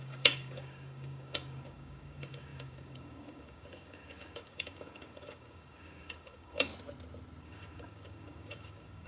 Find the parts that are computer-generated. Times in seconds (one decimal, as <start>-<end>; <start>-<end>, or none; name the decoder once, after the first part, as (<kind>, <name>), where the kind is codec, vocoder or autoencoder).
0.0-6.7 (codec, DAC); 7.4-9.1